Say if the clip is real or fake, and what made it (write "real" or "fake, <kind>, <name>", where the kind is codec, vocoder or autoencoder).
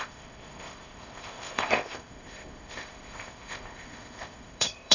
fake, codec, ZipCodec